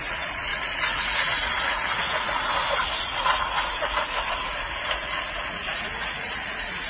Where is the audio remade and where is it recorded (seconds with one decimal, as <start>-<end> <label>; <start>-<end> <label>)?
0.0-6.9 remade